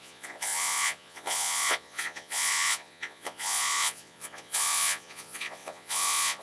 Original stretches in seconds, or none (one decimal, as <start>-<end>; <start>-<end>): none